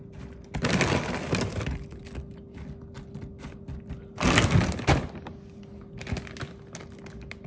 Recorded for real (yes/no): yes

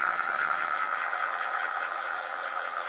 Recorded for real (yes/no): no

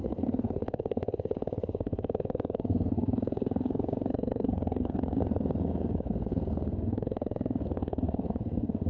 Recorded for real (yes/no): no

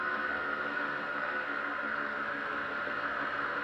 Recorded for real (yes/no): no